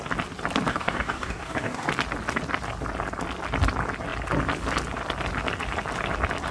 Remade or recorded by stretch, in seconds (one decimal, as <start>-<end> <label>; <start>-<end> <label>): 0.0-0.7 recorded; 0.7-1.9 remade; 1.9-6.5 recorded